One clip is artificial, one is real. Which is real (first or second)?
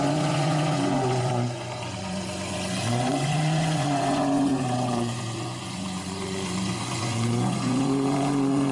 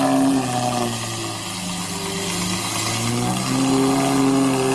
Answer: second